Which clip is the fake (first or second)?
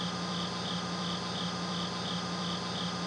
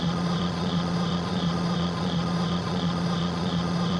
second